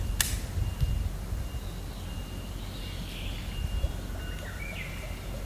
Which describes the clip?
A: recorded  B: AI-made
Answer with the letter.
A